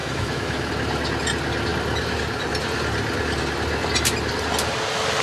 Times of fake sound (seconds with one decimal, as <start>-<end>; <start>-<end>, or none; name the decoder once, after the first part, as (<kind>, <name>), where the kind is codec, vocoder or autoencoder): 0.0-0.7 (autoencoder, DAC-VAE)